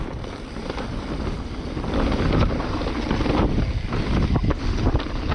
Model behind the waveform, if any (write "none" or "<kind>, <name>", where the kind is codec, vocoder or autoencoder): none